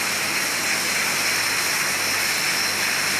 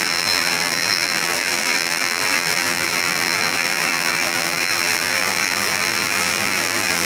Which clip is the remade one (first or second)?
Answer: second